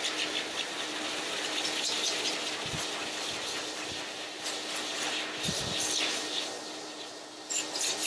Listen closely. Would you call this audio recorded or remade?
recorded